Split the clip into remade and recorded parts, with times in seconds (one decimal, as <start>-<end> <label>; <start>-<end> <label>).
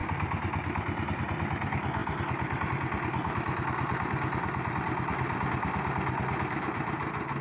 0.0-7.4 recorded